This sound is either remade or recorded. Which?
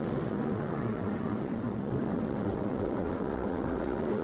remade